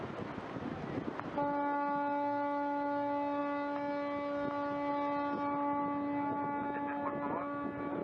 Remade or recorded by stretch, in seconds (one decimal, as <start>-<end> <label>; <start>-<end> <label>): 0.0-8.0 recorded